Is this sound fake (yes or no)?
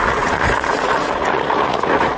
yes